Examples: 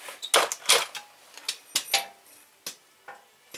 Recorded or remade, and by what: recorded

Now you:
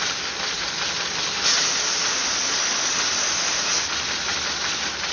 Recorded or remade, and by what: recorded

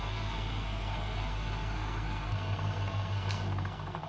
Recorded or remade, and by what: remade, codec, SNAC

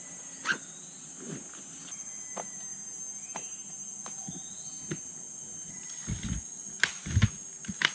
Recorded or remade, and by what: recorded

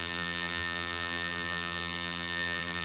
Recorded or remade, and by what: remade, vocoder, BigVGAN v2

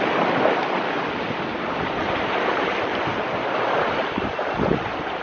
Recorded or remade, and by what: recorded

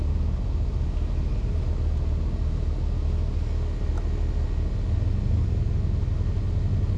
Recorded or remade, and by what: recorded